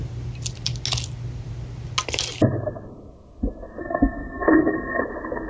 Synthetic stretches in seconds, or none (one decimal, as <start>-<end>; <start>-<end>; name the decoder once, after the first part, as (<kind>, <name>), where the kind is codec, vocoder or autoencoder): 3.8-5.0 (codec, SNAC)